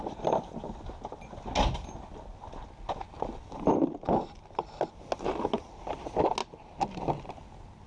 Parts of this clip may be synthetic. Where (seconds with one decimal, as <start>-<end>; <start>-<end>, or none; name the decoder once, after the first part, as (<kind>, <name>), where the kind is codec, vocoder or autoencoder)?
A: none